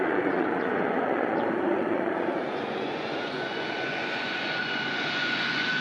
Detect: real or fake fake